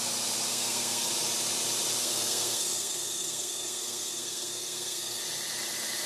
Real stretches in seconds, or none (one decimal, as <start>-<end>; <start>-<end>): 0.0-0.5; 1.1-2.0; 5.2-6.1